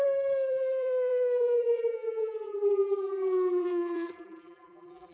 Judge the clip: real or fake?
fake